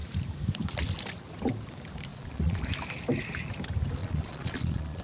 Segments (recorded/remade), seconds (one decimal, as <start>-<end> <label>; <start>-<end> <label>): 0.0-2.1 recorded; 2.1-2.7 remade; 2.7-4.0 recorded; 4.0-5.0 remade